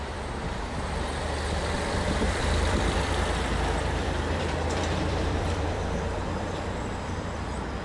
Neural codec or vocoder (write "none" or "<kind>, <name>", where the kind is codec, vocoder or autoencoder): vocoder, BigVGAN v2